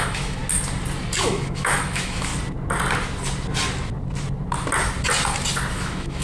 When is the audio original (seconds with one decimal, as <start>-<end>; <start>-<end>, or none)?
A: 0.4-1.2; 2.3-5.7